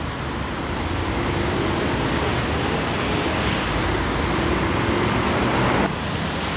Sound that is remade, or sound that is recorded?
recorded